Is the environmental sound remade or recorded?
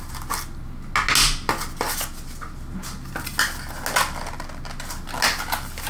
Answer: recorded